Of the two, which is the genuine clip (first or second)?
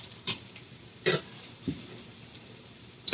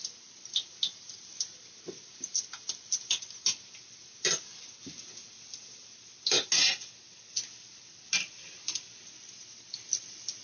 second